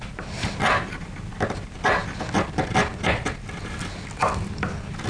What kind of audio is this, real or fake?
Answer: real